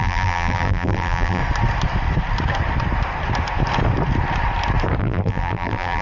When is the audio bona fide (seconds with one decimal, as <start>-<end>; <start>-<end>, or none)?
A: 1.4-5.0

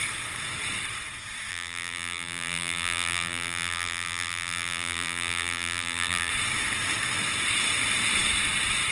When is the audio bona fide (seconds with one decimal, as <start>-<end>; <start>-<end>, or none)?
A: 0.0-1.5; 6.3-8.9

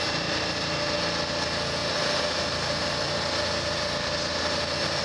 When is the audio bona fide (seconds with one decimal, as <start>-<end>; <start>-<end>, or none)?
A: 0.0-5.0

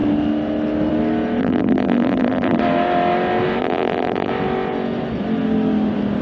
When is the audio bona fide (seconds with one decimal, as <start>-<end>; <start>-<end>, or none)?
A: 0.0-1.4; 2.6-3.6; 4.3-6.2

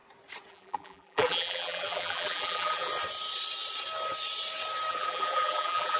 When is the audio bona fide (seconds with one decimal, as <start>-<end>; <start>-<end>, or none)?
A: 0.0-0.5; 2.9-4.9